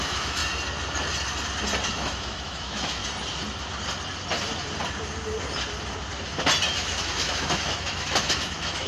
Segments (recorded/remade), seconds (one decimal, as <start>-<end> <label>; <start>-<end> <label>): 0.0-0.4 remade; 0.4-1.9 recorded; 1.9-3.0 remade; 3.0-6.7 recorded; 6.7-8.9 remade

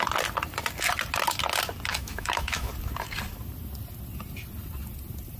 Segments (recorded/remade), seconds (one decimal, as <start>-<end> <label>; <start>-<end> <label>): 0.0-1.9 recorded; 1.9-2.7 remade; 2.7-5.4 recorded

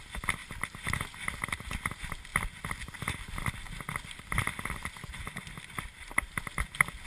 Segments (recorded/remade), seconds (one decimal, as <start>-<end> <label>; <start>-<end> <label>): 0.0-7.1 recorded

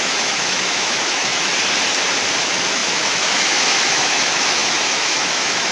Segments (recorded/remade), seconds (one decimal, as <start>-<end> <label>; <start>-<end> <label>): 0.0-1.5 remade; 1.5-2.4 recorded; 2.4-5.7 remade